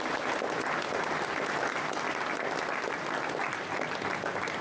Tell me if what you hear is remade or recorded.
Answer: recorded